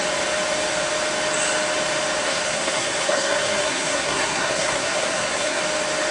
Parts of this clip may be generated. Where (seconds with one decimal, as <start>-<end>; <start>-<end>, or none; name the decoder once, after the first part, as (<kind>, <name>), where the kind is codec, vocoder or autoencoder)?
2.2-5.6 (codec, SNAC)